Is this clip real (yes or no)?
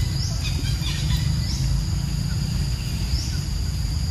yes